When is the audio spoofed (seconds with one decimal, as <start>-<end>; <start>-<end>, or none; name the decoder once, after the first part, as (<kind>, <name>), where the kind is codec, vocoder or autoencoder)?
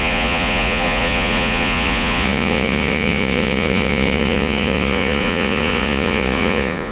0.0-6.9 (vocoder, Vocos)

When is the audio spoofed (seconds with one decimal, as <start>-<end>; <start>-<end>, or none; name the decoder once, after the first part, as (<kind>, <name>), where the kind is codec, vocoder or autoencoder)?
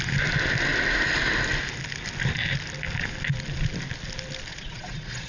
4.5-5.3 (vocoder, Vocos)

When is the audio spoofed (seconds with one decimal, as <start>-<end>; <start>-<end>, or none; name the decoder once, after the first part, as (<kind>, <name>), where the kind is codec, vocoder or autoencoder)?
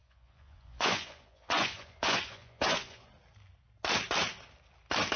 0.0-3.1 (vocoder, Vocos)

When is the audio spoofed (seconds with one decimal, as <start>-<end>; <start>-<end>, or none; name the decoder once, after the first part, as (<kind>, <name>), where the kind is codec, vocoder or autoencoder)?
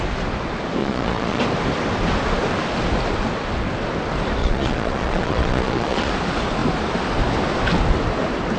0.8-1.4 (vocoder, Vocos); 4.4-6.1